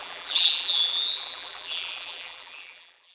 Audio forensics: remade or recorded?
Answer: remade